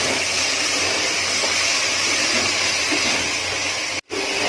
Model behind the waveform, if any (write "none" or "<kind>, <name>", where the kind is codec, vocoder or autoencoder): none